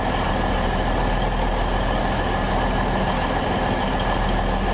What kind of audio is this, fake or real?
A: real